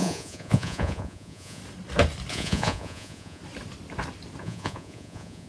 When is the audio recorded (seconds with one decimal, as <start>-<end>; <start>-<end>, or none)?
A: 1.6-2.3; 3.4-4.4